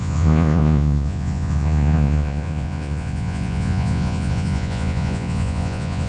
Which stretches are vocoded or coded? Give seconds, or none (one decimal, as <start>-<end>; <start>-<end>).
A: 0.0-6.1